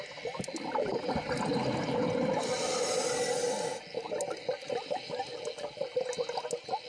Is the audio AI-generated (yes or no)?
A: no